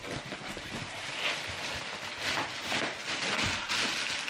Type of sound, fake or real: real